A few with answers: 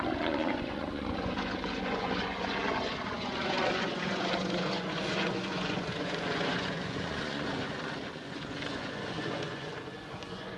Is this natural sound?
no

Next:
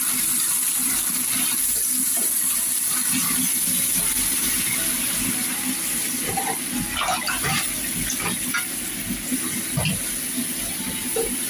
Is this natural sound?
yes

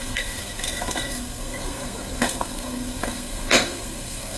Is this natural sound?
no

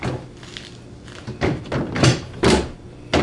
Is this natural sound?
yes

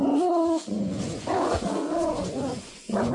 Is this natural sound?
no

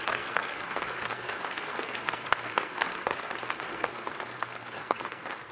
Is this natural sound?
no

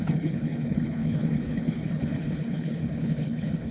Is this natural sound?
no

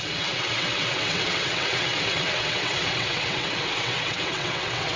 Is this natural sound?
no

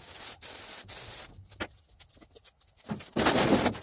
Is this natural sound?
yes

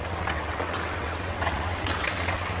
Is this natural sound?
no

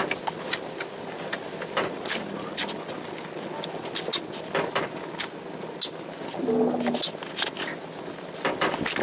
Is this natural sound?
yes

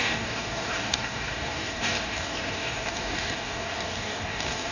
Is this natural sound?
no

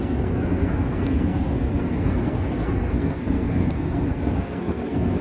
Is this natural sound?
no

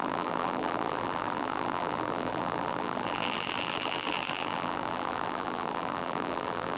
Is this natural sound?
no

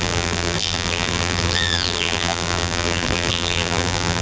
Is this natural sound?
no